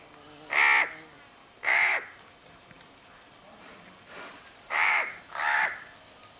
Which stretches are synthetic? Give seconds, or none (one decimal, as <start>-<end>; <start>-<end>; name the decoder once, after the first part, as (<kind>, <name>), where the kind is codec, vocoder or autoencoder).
1.4-5.2 (vocoder, BigVGAN v2)